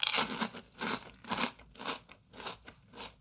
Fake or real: real